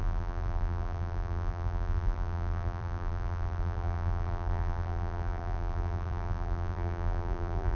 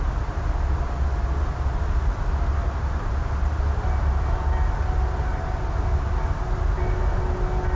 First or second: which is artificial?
first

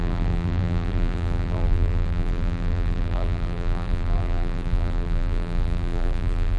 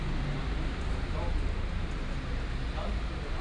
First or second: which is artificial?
first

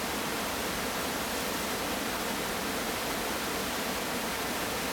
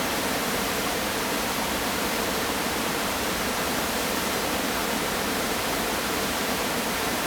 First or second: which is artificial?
second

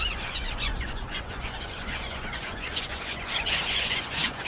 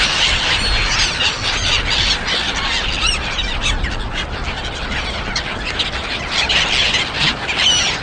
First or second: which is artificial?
first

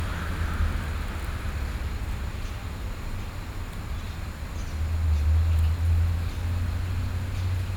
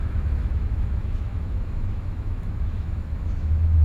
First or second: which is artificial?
second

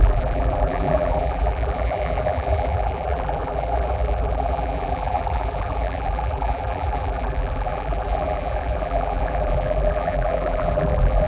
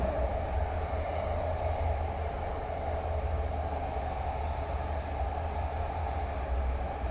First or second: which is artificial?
first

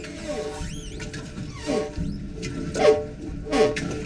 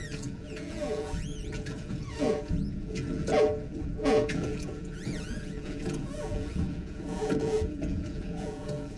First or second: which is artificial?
second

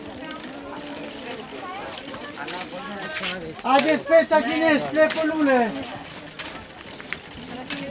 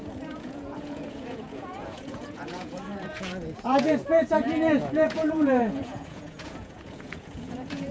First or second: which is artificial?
second